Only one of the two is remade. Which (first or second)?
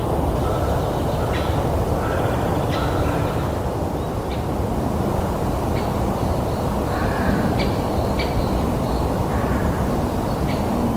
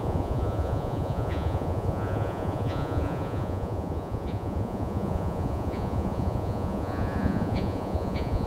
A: second